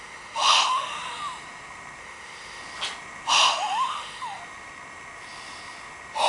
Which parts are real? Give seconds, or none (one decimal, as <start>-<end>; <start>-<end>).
0.9-2.0; 2.6-3.3; 4.4-6.3